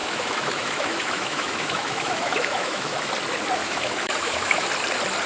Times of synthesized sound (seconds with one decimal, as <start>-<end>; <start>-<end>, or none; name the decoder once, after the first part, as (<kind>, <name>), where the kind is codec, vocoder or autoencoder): 0.0-3.1 (autoencoder, DAC-VAE); 3.6-4.7